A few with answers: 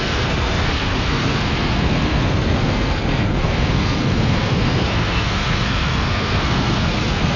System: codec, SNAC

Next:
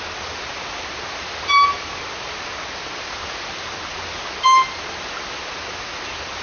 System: none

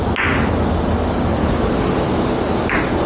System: none